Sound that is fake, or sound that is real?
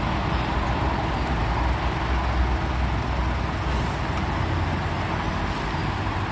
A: real